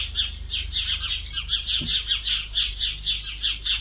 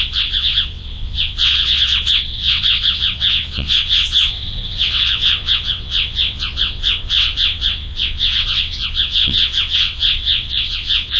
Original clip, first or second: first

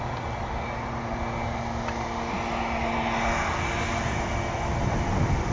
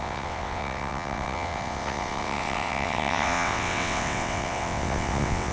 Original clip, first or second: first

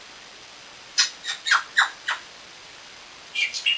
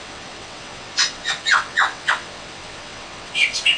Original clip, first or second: first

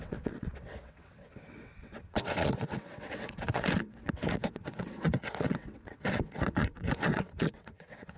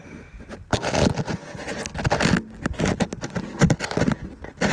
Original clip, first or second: second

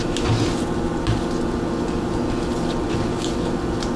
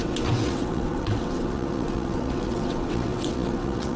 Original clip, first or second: first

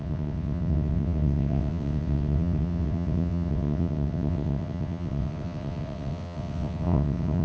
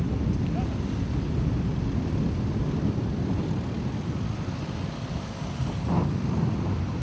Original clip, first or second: second